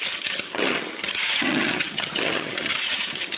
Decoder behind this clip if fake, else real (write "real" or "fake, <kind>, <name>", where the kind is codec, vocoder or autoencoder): fake, vocoder, HiFi-GAN